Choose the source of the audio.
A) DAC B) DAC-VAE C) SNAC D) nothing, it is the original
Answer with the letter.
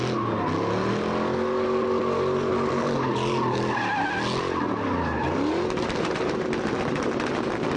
D